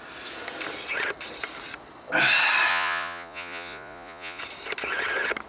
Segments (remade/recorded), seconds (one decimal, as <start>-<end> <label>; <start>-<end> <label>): 0.0-2.7 recorded; 2.7-4.4 remade; 4.4-5.5 recorded